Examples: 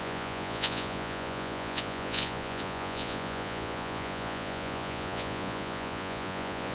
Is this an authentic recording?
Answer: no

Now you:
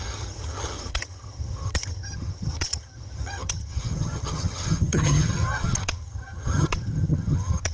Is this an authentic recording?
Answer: no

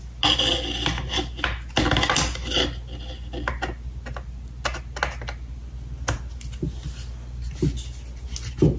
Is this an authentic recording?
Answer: yes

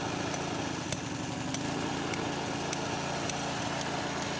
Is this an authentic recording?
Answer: yes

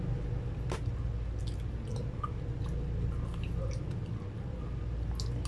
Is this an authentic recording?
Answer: yes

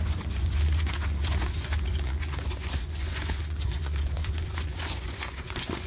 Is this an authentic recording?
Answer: no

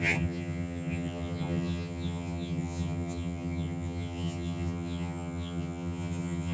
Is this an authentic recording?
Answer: no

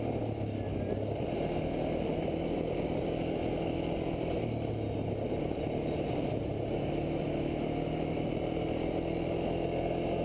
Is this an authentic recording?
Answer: yes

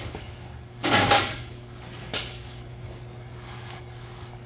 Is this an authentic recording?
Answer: no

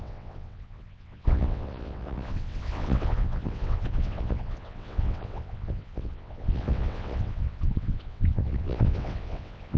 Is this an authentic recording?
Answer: no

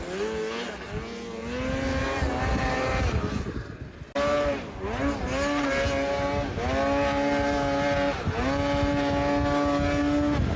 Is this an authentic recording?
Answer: yes